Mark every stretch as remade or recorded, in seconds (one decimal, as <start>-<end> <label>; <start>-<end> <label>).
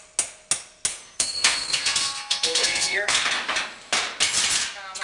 0.0-0.9 recorded; 0.9-3.3 remade; 3.3-5.0 recorded